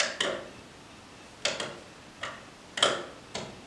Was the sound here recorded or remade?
recorded